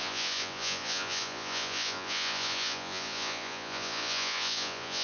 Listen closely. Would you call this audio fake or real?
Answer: fake